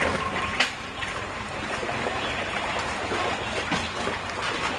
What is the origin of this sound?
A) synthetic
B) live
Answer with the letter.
B